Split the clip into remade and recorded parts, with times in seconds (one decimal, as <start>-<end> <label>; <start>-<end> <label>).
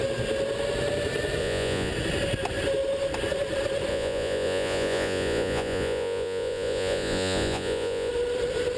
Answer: 0.0-1.4 recorded; 1.4-1.9 remade; 1.9-3.9 recorded; 3.9-8.1 remade; 8.1-8.8 recorded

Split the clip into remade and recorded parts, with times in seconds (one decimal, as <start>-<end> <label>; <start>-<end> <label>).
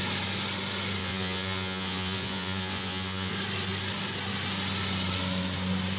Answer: 0.0-1.0 recorded; 1.0-3.3 remade; 3.3-6.0 recorded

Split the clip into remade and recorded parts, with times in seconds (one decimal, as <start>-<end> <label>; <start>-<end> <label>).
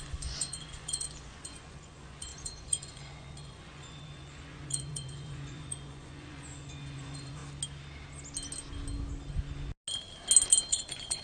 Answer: 0.0-7.4 remade; 7.4-10.7 recorded; 10.7-11.2 remade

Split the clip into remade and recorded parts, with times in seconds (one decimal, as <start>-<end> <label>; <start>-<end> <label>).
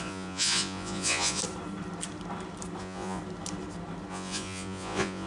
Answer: 0.0-1.4 remade; 1.4-2.8 recorded; 2.8-3.2 remade; 3.2-4.1 recorded; 4.1-5.3 remade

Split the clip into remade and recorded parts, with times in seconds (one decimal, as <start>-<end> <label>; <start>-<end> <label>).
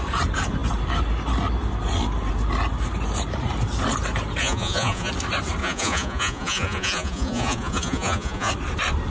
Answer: 0.0-4.4 recorded; 4.4-5.1 remade; 5.1-5.6 recorded; 5.6-8.5 remade; 8.5-9.1 recorded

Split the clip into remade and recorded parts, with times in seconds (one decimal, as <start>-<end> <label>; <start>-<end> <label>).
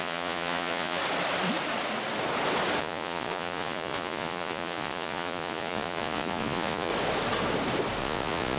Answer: 0.0-1.0 remade; 1.0-2.8 recorded; 2.8-6.9 remade; 6.9-8.0 recorded; 8.0-8.6 remade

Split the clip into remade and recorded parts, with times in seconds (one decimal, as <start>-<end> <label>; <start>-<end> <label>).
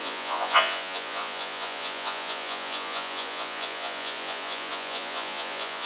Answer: 0.0-5.8 remade